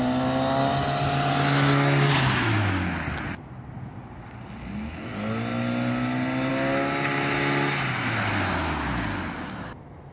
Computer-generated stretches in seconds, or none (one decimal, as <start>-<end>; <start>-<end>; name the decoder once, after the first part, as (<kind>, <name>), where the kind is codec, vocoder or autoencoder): none